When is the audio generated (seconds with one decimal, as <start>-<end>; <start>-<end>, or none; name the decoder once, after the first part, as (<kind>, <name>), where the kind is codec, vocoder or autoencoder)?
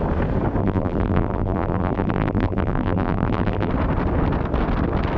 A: 0.6-3.7 (vocoder, BigVGAN v2)